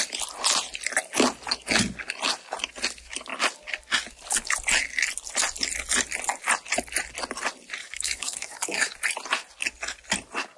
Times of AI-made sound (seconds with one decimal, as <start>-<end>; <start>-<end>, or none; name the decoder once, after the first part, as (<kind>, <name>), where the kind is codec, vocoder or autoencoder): 7.8-8.9 (codec, DAC)